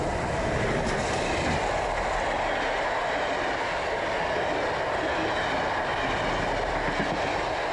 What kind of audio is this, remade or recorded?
recorded